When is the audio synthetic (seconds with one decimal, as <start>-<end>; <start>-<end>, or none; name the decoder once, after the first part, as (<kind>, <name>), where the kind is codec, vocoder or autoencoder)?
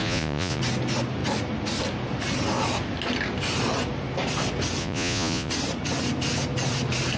0.0-0.6 (vocoder, Vocos); 4.8-5.5